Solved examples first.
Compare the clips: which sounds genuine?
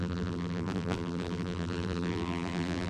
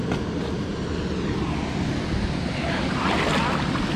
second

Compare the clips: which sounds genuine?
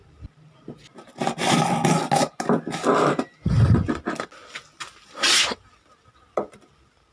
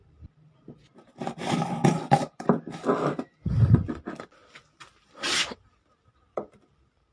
first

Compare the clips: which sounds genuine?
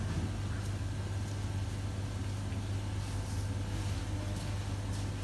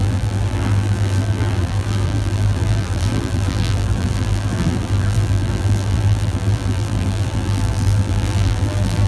first